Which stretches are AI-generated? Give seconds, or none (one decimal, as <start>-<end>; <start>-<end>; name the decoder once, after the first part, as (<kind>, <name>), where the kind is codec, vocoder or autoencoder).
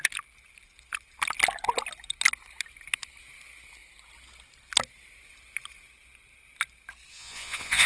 7.1-7.9 (vocoder, Vocos)